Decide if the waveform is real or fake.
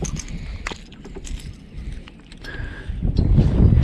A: real